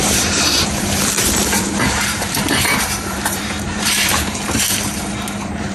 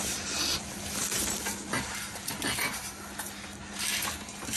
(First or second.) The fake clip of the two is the first